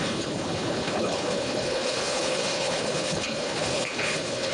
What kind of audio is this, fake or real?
fake